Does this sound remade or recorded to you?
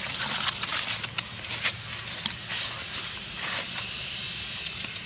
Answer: remade